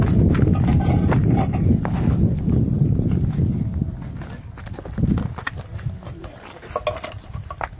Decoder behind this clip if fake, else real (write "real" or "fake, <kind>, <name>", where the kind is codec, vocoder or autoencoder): real